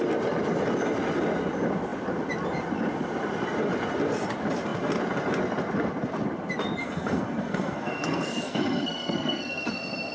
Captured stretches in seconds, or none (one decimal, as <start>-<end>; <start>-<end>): 0.0-6.8; 9.7-10.1